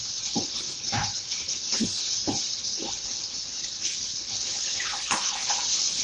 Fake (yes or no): yes